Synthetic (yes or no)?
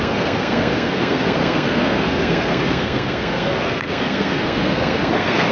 yes